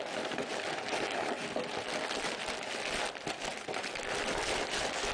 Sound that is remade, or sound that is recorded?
recorded